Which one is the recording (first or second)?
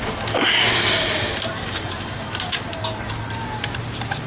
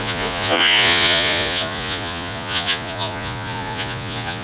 first